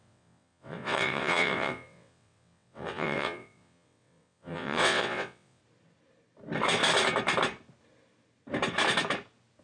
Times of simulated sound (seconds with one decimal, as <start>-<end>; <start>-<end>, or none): 0.0-5.6